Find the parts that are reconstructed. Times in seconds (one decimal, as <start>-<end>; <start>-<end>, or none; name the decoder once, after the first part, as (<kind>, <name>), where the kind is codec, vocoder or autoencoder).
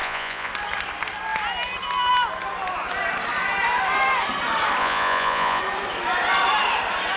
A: 0.0-0.5 (vocoder, Vocos); 4.8-5.6